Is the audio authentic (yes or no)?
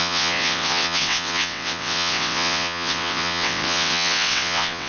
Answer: no